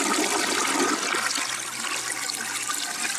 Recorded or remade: recorded